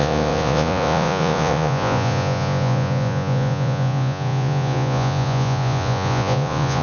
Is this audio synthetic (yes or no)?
yes